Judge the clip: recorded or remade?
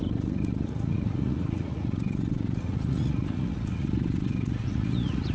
remade